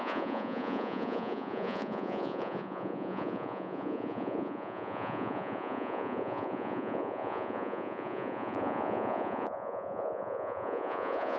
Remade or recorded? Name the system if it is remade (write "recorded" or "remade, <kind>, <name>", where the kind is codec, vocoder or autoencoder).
remade, vocoder, Vocos